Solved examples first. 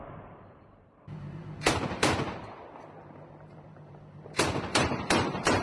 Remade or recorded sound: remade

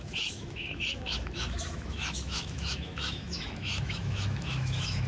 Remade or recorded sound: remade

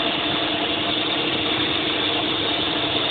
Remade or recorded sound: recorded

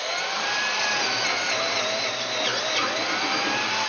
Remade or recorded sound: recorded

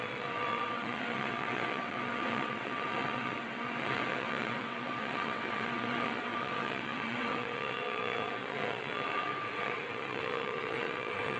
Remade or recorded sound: remade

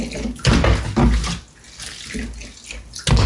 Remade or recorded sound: recorded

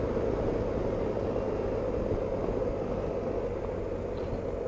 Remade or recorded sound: recorded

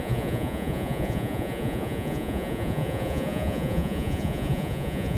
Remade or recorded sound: remade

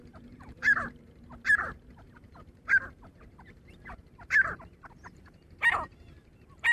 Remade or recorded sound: remade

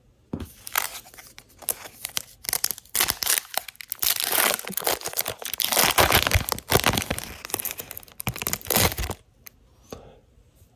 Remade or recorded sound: recorded